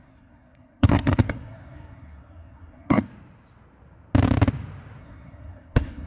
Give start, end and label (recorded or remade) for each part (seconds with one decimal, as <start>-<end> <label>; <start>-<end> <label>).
0.0-3.1 remade; 3.1-5.0 recorded; 5.0-6.1 remade